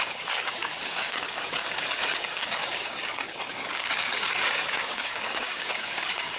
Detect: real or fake fake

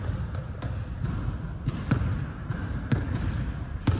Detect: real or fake real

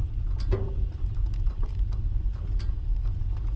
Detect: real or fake real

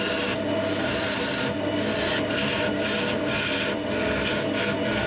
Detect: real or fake real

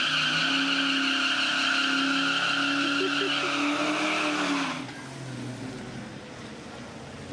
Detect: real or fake real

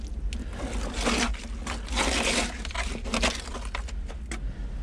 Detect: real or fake real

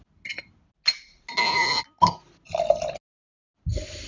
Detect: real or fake real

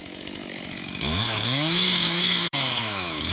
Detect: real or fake fake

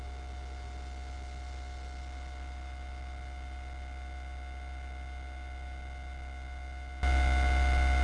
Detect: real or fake real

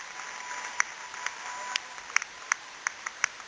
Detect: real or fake real